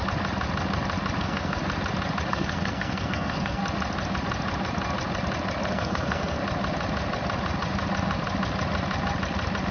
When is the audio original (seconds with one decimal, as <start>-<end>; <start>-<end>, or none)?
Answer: 0.0-1.2; 1.6-2.3; 3.6-5.7; 6.4-9.7